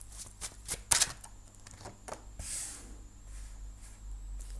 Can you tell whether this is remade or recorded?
recorded